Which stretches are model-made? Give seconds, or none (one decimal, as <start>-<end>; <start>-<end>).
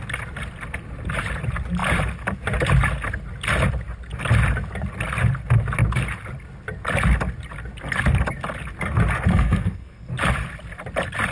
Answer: 9.3-10.1